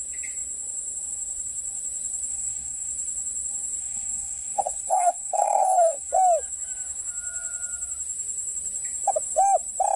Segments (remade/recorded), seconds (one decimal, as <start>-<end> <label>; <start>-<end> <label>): 0.0-2.3 recorded; 2.3-2.9 remade; 2.9-3.8 recorded; 3.8-6.1 remade; 6.1-10.0 recorded